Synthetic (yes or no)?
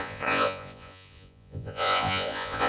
yes